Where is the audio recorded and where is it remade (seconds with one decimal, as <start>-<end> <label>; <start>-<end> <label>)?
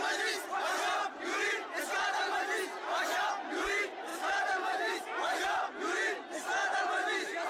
0.0-4.1 recorded; 4.1-5.7 remade; 5.7-7.5 recorded